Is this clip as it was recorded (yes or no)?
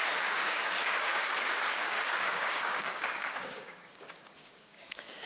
no